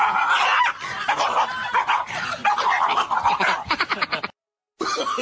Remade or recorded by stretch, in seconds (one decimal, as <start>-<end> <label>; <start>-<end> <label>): 0.0-5.2 recorded

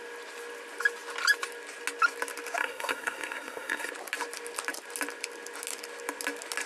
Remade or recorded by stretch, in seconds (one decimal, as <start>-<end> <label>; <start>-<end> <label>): 0.0-2.6 recorded; 2.6-3.9 remade; 3.9-6.7 recorded

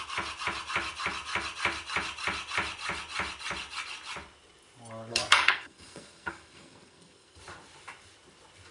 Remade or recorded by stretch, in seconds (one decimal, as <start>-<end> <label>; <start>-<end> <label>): 0.0-5.1 recorded; 5.1-7.4 remade; 7.4-8.7 recorded